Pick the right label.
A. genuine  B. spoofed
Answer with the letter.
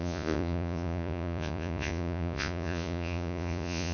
B